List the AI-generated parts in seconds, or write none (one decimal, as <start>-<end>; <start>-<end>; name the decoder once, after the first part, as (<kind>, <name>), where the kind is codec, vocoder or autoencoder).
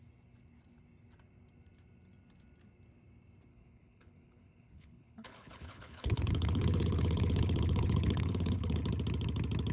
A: 3.5-8.8 (codec, HILCodec)